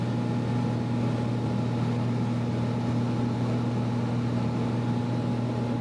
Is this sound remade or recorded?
recorded